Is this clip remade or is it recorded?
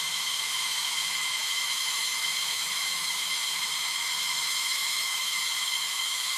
remade